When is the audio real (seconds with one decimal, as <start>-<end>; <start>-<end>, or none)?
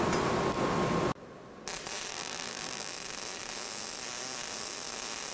0.0-2.1; 2.9-5.3